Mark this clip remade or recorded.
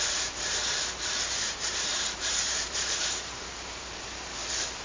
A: remade